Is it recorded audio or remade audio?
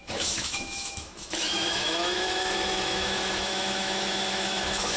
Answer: remade